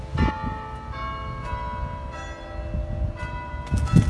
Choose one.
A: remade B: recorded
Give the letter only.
B